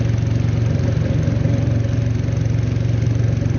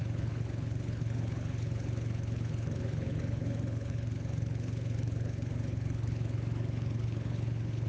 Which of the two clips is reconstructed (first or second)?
second